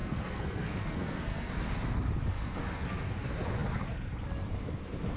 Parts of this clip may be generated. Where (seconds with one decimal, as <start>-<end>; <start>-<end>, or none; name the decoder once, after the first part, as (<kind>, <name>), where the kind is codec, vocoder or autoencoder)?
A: 0.0-1.5 (codec, SNAC); 2.3-3.1